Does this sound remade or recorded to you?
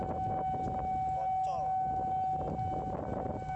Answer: recorded